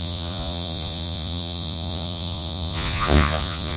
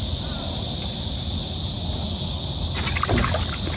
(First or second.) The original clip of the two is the second